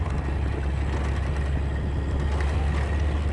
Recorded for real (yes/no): yes